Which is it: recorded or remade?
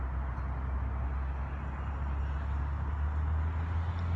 recorded